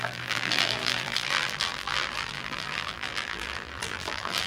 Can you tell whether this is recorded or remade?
remade